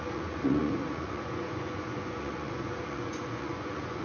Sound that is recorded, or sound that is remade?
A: remade